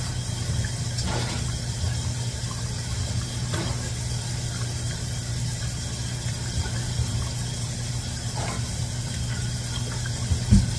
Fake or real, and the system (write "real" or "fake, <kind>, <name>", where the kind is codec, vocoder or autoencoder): real